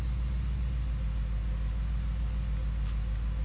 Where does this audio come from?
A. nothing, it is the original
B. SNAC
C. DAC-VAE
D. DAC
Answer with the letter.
A